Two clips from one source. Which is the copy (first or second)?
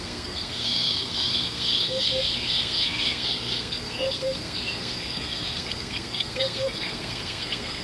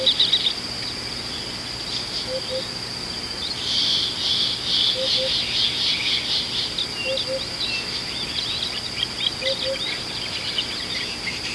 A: first